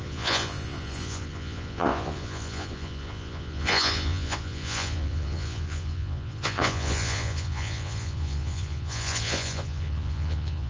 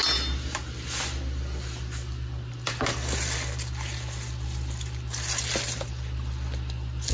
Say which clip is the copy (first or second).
first